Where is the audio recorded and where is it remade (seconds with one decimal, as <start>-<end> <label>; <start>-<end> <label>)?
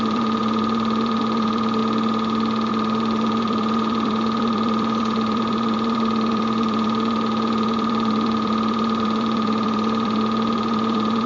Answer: 0.0-1.8 remade; 1.8-2.7 recorded; 2.7-11.3 remade